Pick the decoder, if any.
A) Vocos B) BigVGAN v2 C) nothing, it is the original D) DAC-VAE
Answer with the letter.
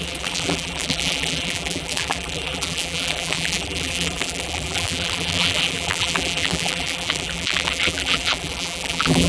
B